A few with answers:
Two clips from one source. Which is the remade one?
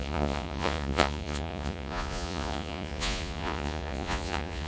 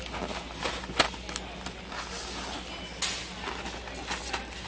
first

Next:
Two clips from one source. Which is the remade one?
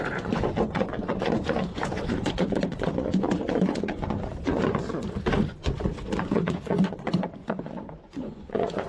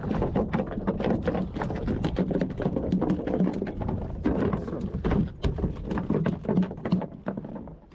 first